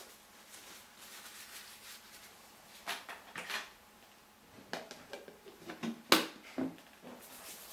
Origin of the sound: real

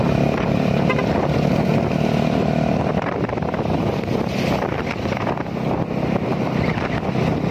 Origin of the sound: real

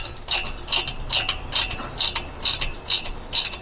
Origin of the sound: real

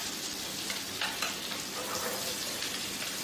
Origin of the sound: real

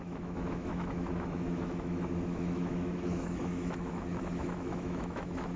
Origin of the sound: fake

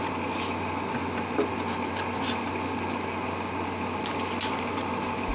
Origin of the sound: real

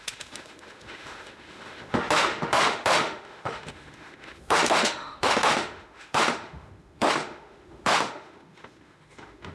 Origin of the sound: fake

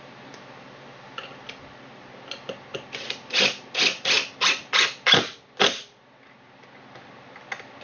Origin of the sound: real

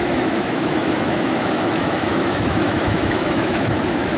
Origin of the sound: fake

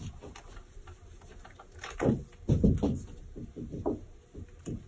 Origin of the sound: real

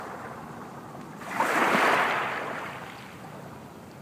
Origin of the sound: real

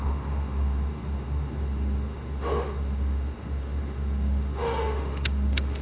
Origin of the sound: fake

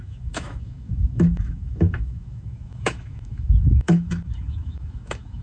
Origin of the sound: fake